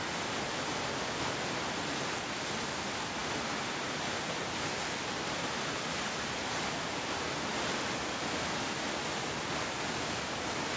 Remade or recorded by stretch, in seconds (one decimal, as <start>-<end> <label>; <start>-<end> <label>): 0.0-10.8 recorded